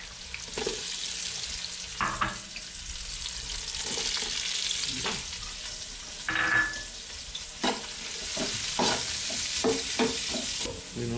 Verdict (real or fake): real